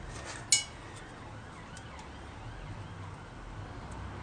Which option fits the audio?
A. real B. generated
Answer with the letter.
A